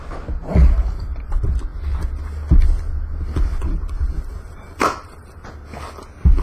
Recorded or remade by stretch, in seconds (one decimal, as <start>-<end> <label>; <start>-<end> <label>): 0.0-6.4 recorded